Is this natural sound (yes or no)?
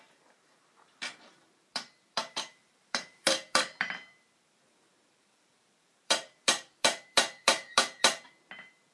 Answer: no